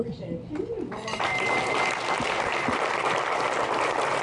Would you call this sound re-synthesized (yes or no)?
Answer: no